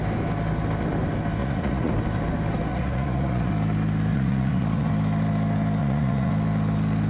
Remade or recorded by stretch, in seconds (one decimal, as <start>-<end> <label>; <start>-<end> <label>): 0.0-1.4 recorded; 1.4-1.9 remade; 1.9-2.7 recorded; 2.7-3.5 remade; 3.5-4.1 recorded; 4.1-4.9 remade; 4.9-5.8 recorded; 5.8-6.3 remade; 6.3-7.1 recorded